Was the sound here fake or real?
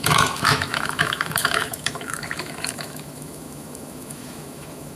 fake